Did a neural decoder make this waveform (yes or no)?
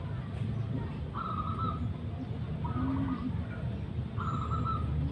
no